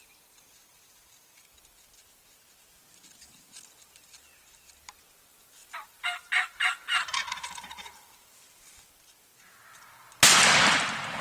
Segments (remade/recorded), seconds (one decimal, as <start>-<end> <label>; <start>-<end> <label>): 0.0-5.6 recorded; 5.6-8.9 remade; 8.9-11.2 recorded